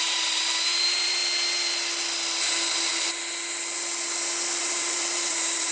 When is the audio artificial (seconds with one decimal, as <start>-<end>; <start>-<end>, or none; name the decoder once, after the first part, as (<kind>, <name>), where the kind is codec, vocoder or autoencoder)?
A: 0.0-1.2 (vocoder, BigVGAN v2); 4.6-5.7